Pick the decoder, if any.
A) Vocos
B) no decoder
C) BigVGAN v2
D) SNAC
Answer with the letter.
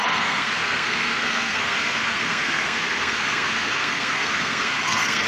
D